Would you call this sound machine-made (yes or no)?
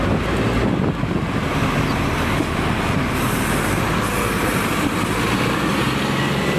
no